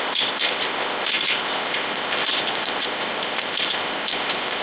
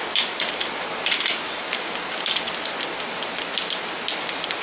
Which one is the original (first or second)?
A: second